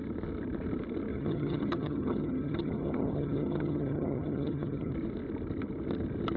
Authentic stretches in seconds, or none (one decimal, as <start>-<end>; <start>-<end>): 0.0-1.1; 4.9-6.4